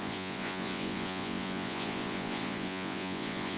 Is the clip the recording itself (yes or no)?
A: no